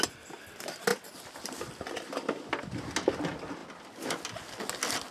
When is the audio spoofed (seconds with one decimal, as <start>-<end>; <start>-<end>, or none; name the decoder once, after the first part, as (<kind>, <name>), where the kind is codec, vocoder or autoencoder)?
none